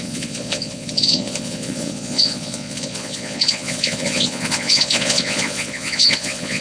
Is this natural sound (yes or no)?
no